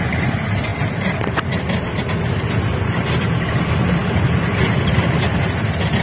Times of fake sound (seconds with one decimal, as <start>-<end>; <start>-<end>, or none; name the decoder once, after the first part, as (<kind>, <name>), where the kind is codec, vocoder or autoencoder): none